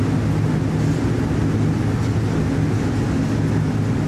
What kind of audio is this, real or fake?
real